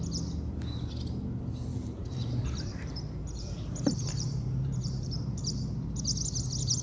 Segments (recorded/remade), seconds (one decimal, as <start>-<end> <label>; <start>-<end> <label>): 0.0-1.7 recorded; 1.7-5.4 remade; 5.4-6.8 recorded